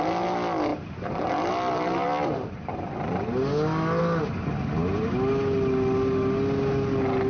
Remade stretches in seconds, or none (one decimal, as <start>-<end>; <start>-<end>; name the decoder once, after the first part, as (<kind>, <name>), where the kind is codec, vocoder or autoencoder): none